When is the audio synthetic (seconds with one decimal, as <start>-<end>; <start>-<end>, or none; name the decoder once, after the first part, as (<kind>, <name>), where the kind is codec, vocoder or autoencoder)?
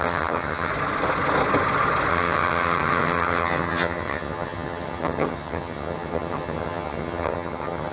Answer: 0.0-0.7 (vocoder, HiFi-GAN); 2.1-7.9